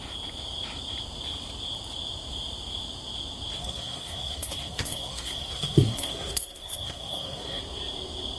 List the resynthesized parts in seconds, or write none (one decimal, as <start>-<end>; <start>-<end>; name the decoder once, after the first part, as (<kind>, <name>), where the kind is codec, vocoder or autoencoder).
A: 3.6-7.6 (codec, SNAC)